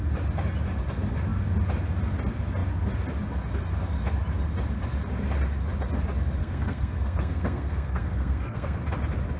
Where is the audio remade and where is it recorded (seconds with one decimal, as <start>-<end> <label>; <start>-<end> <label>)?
0.0-6.4 recorded; 6.4-8.8 remade; 8.8-9.4 recorded